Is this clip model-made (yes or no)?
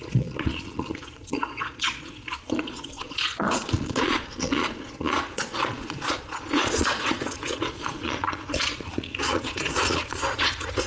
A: yes